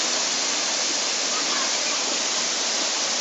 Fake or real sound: real